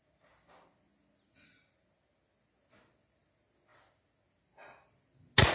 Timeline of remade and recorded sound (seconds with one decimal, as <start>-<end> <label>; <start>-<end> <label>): 0.0-5.5 recorded